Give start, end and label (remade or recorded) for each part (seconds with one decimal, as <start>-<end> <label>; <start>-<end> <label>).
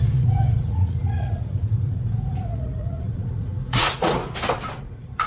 0.0-4.2 remade; 4.2-4.8 recorded; 4.8-5.3 remade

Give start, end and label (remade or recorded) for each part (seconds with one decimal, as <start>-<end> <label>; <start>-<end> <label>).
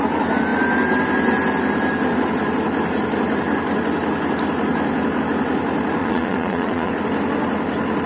0.0-6.0 recorded; 6.0-6.9 remade; 6.9-8.1 recorded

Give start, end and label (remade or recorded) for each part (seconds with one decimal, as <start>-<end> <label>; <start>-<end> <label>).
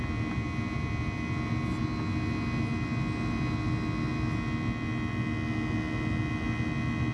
0.0-7.1 recorded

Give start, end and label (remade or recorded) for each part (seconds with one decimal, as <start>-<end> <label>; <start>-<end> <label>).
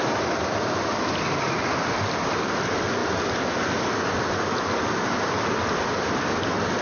0.0-6.8 recorded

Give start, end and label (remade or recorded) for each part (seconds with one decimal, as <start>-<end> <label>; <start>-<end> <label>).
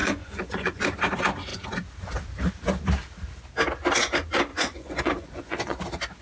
0.0-0.8 remade; 0.8-4.5 recorded; 4.5-5.8 remade; 5.8-6.2 recorded